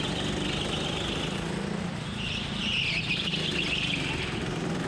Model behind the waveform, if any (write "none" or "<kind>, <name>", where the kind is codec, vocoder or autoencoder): none